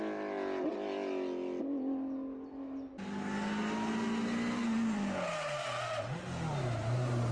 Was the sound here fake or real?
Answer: real